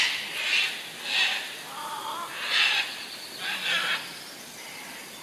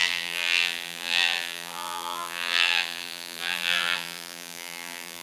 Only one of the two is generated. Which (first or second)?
second